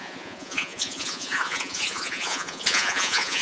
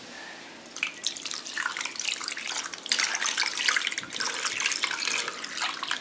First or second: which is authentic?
second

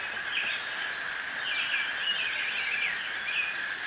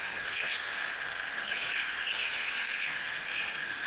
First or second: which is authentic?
first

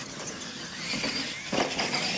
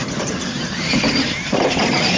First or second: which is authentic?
first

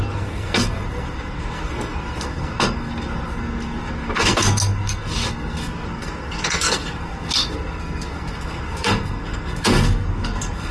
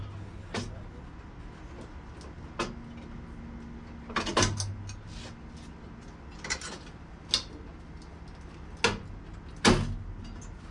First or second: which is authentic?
second